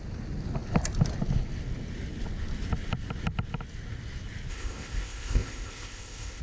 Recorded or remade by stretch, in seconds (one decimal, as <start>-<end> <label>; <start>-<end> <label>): 0.0-4.5 recorded; 4.5-6.4 remade